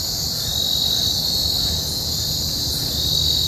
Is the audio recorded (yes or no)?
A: yes